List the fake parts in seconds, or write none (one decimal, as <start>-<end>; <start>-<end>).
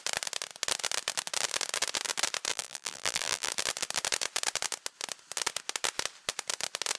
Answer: 2.5-3.5